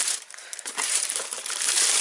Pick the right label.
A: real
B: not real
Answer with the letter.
B